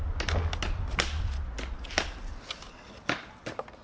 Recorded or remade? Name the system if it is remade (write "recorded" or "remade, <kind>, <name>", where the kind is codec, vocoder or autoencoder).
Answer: recorded